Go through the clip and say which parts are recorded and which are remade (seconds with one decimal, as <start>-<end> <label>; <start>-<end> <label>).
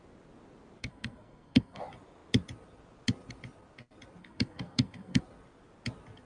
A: 0.0-0.8 recorded; 0.8-1.8 remade; 1.8-4.2 recorded; 4.2-5.2 remade; 5.2-6.3 recorded